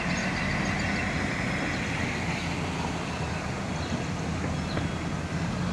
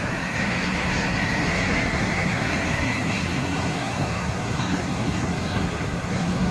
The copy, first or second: second